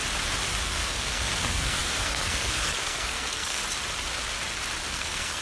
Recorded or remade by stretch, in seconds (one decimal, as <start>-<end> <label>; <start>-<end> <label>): 0.0-0.6 recorded; 0.6-3.6 remade; 3.6-4.9 recorded; 4.9-5.4 remade